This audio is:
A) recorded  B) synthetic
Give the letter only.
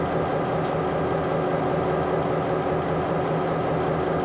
A